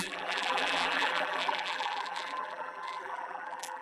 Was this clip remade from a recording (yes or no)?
yes